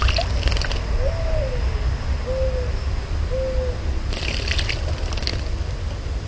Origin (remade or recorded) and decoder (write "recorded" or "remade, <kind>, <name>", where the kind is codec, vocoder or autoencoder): recorded